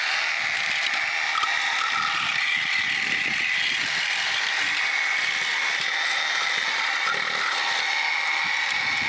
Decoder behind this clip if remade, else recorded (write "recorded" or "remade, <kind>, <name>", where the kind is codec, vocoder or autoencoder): recorded